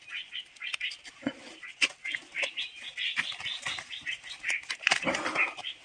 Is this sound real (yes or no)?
yes